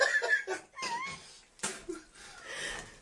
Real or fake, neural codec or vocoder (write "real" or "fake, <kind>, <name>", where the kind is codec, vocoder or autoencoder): real